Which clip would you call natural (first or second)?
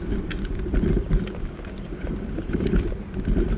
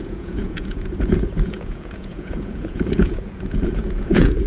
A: first